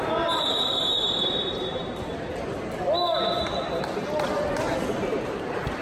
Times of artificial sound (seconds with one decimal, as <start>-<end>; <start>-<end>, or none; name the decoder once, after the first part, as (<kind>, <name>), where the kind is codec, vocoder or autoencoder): none